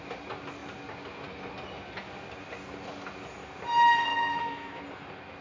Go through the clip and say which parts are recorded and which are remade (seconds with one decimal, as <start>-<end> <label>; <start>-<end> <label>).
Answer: 0.0-4.1 recorded; 4.1-4.8 remade; 4.8-5.4 recorded